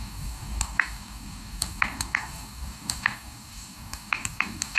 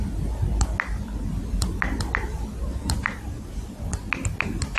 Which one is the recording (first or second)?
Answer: second